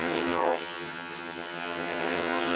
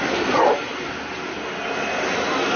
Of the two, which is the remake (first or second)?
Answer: first